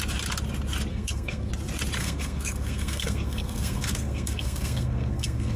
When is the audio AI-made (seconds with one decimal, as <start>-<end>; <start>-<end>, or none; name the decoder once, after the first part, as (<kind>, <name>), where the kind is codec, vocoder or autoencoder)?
0.9-1.5 (codec, SNAC); 2.0-5.6